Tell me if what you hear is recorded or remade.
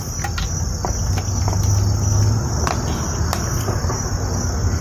recorded